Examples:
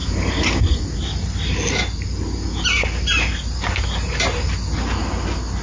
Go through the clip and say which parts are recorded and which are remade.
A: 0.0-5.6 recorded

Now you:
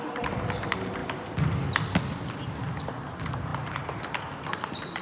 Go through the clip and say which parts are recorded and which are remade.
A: 0.0-5.0 recorded

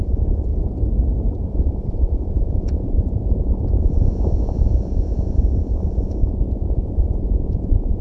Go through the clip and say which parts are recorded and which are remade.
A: 0.0-0.5 remade; 0.5-1.5 recorded; 1.5-8.0 remade

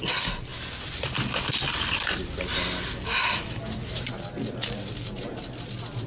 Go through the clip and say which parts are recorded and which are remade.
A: 0.0-6.1 recorded

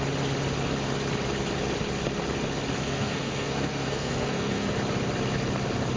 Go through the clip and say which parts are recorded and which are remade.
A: 0.0-2.8 recorded; 2.8-4.7 remade; 4.7-6.0 recorded